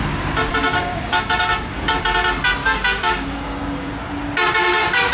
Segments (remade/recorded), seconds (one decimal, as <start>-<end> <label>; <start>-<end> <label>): 0.0-0.5 recorded; 0.5-1.9 remade; 1.9-2.6 recorded; 2.6-3.9 remade; 3.9-5.1 recorded